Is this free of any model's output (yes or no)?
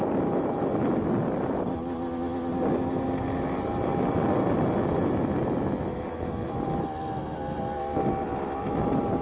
yes